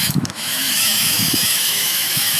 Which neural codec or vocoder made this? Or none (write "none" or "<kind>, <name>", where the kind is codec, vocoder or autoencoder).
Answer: autoencoder, DAC-VAE